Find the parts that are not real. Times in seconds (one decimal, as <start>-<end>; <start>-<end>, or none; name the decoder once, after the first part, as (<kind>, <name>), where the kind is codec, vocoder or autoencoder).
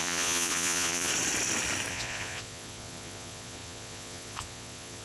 0.0-1.1 (vocoder, Vocos); 1.9-5.0